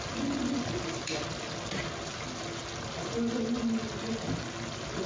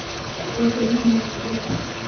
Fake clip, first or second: second